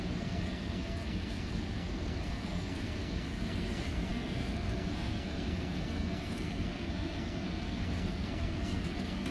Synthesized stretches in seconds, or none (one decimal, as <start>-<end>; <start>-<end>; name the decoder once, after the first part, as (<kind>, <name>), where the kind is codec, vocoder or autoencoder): 0.0-9.3 (codec, SNAC)